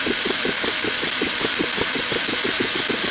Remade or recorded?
recorded